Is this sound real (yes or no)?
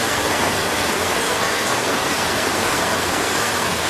no